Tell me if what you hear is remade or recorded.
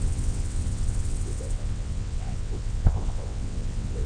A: remade